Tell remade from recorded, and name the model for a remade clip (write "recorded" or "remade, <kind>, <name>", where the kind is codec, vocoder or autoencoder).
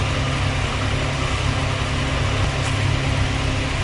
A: recorded